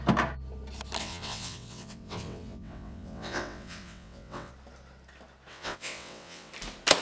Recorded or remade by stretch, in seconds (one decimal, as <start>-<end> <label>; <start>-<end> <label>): 0.0-1.0 recorded; 1.0-4.5 remade; 4.5-5.5 recorded; 5.5-6.5 remade; 6.5-7.0 recorded